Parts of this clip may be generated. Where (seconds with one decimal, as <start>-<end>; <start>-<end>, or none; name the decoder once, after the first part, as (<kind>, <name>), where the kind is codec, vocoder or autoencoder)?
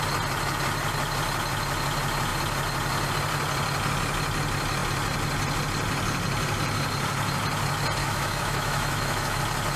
8.0-9.4 (autoencoder, DAC-VAE)